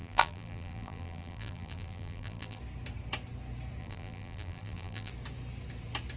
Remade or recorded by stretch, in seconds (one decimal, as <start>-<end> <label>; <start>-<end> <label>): 0.0-2.6 remade; 2.6-3.8 recorded; 3.8-5.1 remade; 5.1-6.2 recorded